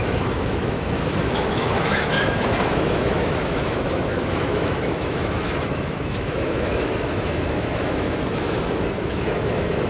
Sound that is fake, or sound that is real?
fake